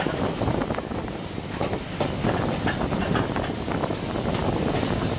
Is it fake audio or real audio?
real